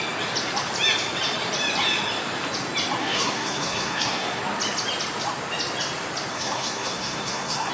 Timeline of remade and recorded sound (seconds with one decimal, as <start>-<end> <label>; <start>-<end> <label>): 0.0-3.0 recorded; 3.0-4.4 remade; 4.4-6.3 recorded; 6.3-7.7 remade